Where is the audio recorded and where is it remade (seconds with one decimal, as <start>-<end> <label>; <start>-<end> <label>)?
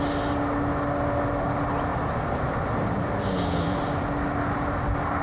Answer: 0.0-5.2 recorded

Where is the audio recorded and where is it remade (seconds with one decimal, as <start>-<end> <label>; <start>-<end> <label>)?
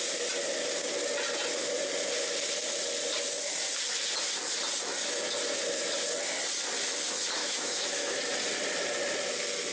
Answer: 0.0-7.4 recorded; 7.4-8.2 remade; 8.2-9.7 recorded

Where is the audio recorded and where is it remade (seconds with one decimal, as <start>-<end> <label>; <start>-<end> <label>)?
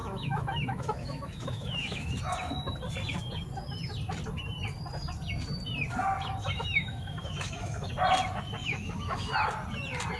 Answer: 0.0-2.2 remade; 2.2-6.4 recorded; 6.4-7.9 remade; 7.9-8.6 recorded; 8.6-9.3 remade; 9.3-10.2 recorded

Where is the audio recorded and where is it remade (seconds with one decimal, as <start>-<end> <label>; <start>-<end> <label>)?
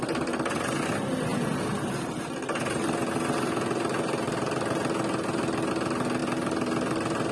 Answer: 0.0-7.3 recorded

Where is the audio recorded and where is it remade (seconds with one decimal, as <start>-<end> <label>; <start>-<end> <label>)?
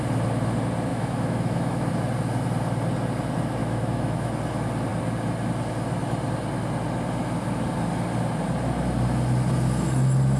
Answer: 0.0-0.9 recorded; 0.9-1.9 remade; 1.9-3.6 recorded; 3.6-4.3 remade; 4.3-10.4 recorded